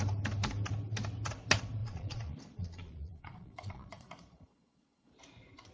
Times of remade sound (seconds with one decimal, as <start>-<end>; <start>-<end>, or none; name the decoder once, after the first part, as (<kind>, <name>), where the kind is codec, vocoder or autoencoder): 1.8-5.2 (vocoder, Vocos)